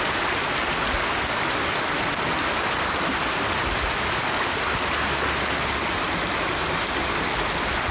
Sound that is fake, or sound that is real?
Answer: real